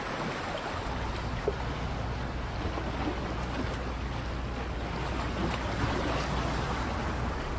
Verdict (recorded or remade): recorded